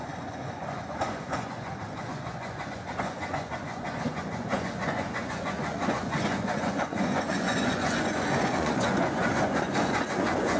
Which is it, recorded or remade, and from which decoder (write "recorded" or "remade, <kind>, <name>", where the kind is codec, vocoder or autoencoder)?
remade, vocoder, Vocos